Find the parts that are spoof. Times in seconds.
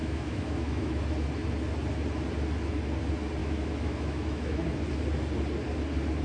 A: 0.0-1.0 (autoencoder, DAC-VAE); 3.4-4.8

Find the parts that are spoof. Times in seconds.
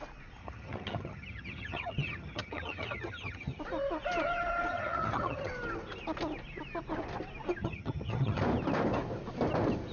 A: 0.4-3.6 (vocoder, HiFi-GAN); 4.7-5.5; 7.6-8.4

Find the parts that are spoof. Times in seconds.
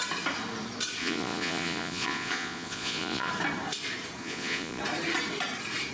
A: 1.0-3.3 (vocoder, Vocos); 4.2-4.8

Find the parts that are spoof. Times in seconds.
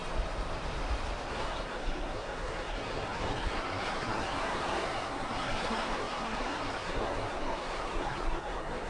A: 1.3-8.9 (codec, SNAC)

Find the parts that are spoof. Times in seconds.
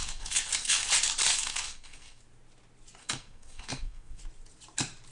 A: 0.0-0.9 (codec, SNAC); 1.3-2.2; 3.0-4.2